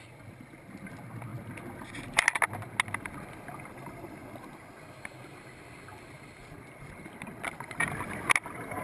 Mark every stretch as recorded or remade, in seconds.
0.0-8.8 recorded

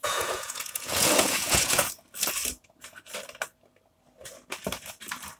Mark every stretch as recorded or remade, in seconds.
0.0-1.9 remade; 1.9-5.4 recorded

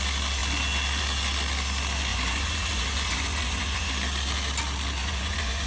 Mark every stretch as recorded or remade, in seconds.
0.0-2.1 recorded; 2.1-3.9 remade; 3.9-5.0 recorded; 5.0-5.7 remade

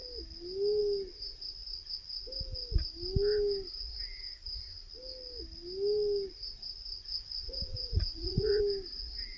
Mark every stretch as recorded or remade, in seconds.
0.0-7.1 recorded; 7.1-8.6 remade; 8.6-9.4 recorded